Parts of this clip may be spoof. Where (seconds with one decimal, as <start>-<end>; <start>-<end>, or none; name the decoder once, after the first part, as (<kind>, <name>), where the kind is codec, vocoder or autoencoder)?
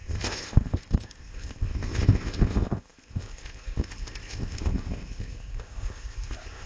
0.0-6.7 (codec, ZipCodec)